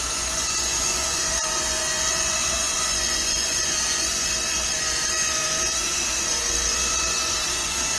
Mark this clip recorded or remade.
remade